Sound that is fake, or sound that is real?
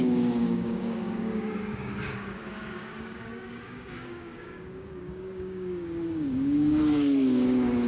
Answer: fake